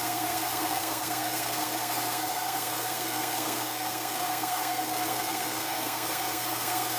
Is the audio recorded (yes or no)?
no